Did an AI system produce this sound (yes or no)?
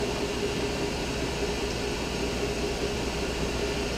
no